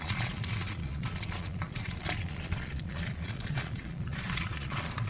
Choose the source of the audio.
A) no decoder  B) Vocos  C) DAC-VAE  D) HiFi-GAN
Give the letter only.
B